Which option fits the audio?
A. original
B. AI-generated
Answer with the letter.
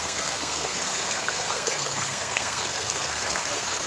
B